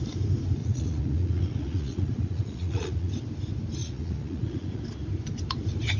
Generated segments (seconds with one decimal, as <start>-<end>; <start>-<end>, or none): 0.6-3.1; 3.8-4.8